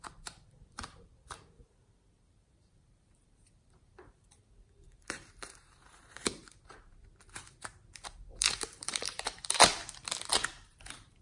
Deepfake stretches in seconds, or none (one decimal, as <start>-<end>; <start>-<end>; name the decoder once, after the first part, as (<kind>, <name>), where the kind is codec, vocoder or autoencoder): 0.0-7.0 (vocoder, BigVGAN v2); 7.6-9.7; 10.3-11.2